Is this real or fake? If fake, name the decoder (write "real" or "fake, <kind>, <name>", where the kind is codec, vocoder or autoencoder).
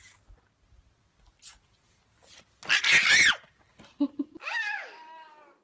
real